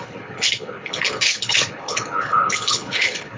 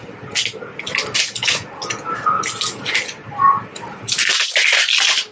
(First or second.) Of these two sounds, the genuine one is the second